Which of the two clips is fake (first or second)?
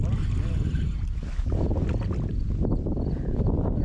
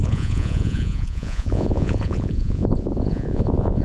second